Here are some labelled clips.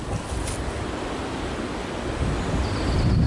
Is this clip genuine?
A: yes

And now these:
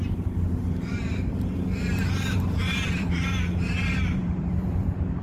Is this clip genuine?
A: no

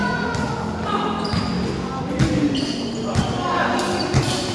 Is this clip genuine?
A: yes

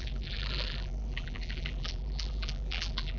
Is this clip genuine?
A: no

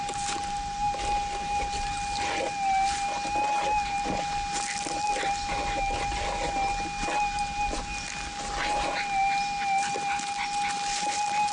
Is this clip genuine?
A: yes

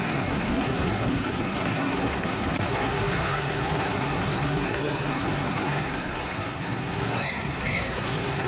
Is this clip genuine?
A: no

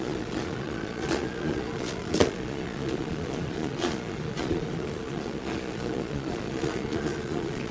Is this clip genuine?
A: no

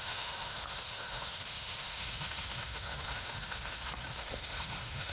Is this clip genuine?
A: no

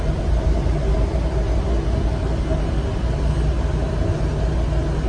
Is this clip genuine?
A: yes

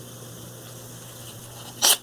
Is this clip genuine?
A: yes